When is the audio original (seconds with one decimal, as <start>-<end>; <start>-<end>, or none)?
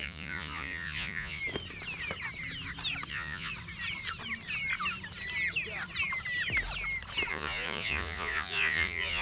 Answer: 1.4-3.1; 3.5-7.3